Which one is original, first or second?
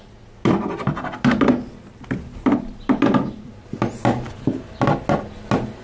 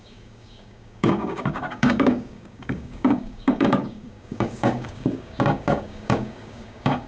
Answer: first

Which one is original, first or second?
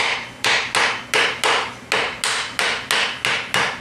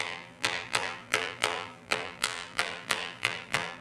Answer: first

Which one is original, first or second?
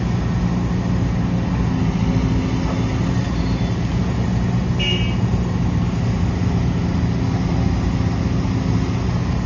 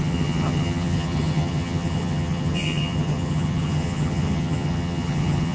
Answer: first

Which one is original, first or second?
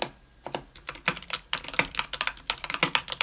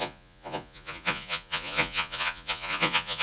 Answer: first